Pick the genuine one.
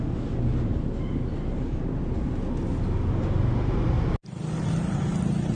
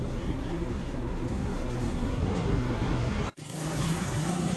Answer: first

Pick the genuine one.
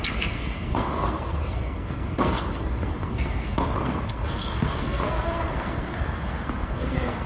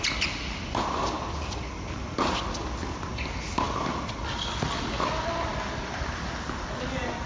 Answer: second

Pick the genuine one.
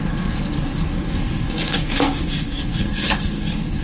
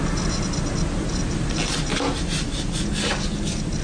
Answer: second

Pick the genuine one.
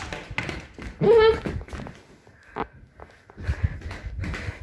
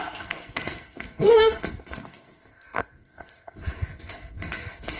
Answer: first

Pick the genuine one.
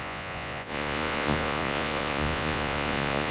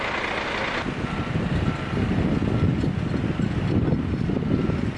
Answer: second